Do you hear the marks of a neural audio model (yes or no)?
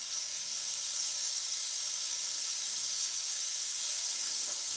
yes